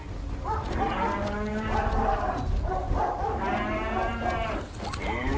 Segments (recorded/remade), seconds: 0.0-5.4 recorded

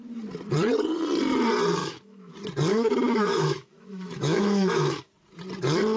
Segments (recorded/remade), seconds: 0.0-1.8 recorded; 1.8-2.3 remade; 2.3-2.7 recorded; 2.7-5.1 remade; 5.1-6.0 recorded

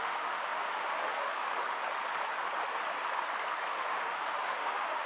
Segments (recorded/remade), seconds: 0.0-1.8 remade; 1.8-3.8 recorded; 3.8-5.1 remade

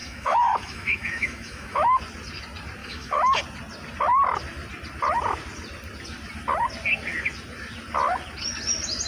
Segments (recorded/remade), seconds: 0.0-2.0 remade; 2.0-2.8 recorded; 2.8-3.4 remade; 3.4-9.1 recorded